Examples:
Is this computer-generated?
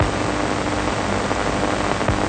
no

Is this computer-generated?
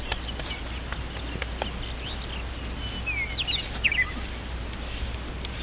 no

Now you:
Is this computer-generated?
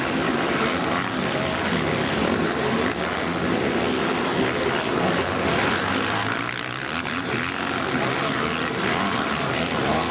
no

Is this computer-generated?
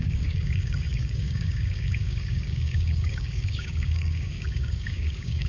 yes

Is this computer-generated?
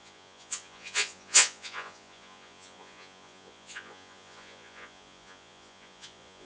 yes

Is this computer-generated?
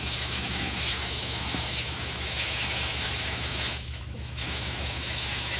yes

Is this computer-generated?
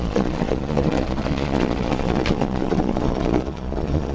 yes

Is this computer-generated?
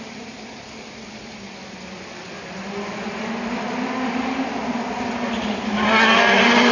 no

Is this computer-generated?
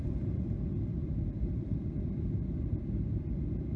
no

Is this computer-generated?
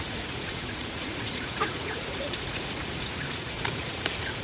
yes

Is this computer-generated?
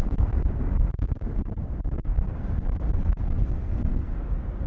yes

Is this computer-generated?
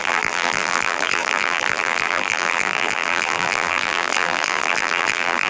yes